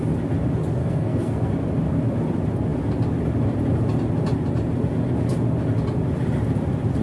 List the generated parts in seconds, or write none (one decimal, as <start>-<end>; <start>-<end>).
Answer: 0.8-1.5